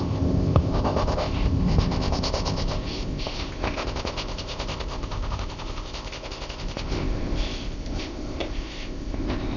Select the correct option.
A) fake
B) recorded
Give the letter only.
A